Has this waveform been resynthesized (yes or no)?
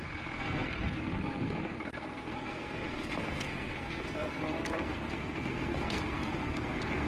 yes